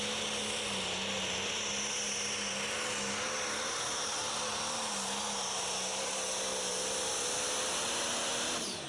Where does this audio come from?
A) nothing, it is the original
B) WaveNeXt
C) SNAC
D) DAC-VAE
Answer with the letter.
A